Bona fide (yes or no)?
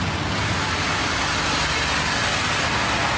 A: yes